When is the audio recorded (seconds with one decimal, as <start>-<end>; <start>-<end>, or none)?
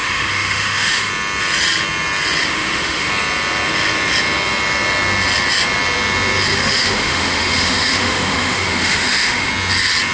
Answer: 1.1-2.4; 3.1-6.5; 9.5-10.1